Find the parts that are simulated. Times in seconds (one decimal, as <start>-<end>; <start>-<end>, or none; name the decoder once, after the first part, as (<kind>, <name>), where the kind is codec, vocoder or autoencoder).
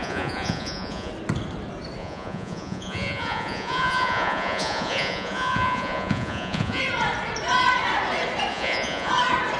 0.0-1.1 (vocoder, Vocos); 2.0-6.8; 8.5-9.1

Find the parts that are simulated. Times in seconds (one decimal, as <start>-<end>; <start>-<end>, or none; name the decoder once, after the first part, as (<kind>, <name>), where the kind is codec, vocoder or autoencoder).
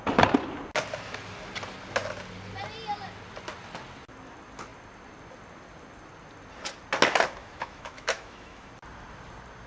7.4-8.7 (autoencoder, DAC-VAE)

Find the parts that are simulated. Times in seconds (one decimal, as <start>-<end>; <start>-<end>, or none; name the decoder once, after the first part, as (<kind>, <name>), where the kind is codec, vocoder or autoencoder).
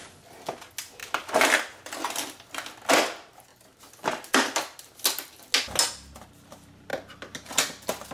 none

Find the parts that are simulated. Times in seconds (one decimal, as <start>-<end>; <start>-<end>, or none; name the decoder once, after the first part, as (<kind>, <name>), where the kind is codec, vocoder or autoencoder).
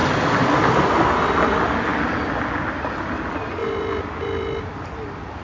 0.0-1.1 (vocoder, BigVGAN v2); 3.6-4.6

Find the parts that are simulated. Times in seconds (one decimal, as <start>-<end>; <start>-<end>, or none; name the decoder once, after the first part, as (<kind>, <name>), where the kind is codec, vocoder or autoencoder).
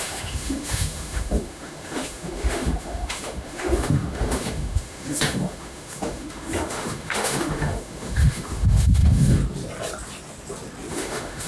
0.0-9.4 (autoencoder, DAC-VAE); 10.9-11.5